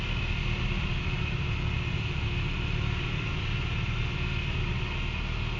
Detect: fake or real real